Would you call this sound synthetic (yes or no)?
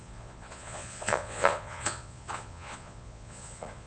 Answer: yes